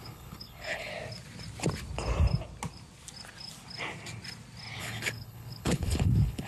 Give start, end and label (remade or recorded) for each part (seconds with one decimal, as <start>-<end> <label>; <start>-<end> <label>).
0.0-0.9 remade; 0.9-4.8 recorded; 4.8-6.5 remade